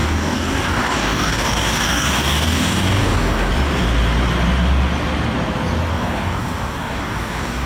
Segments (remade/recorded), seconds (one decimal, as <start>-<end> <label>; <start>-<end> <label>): 0.0-3.5 remade; 3.5-5.9 recorded; 5.9-7.7 remade